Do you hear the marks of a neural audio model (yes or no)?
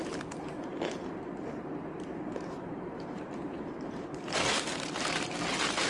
yes